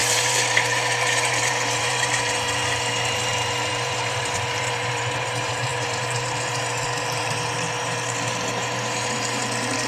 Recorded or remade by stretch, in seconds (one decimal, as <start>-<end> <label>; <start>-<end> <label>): 0.0-9.9 remade